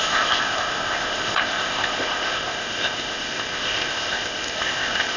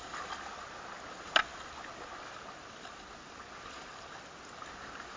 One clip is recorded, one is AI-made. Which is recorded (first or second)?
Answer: second